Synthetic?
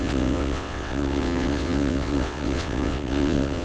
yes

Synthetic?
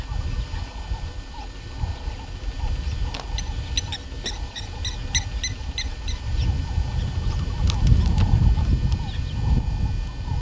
no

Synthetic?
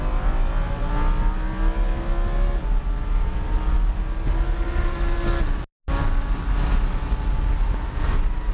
no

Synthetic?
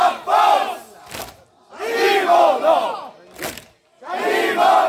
no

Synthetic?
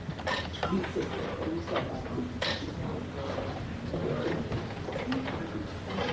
no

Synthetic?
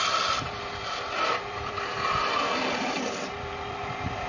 no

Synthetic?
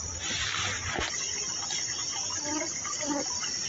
no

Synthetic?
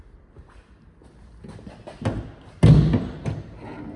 no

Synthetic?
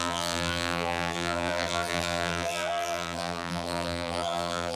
yes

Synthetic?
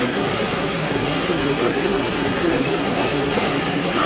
yes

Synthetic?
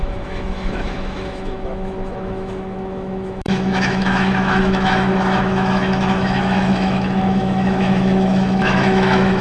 yes